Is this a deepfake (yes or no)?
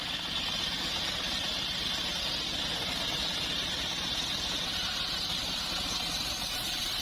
no